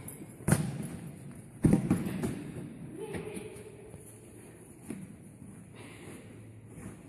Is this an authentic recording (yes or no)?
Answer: yes